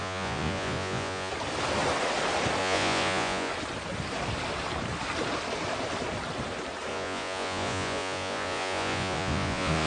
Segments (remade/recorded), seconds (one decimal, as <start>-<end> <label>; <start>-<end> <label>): 0.0-1.3 remade; 1.3-2.6 recorded; 2.6-3.5 remade; 3.5-6.9 recorded; 6.9-9.9 remade